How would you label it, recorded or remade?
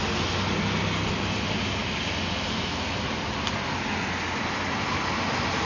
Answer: recorded